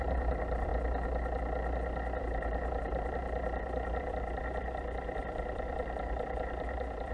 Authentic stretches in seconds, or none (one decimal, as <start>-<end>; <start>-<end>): 0.7-2.2